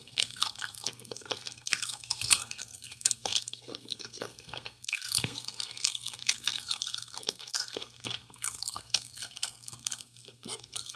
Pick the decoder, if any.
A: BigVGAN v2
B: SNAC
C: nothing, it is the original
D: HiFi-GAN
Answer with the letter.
B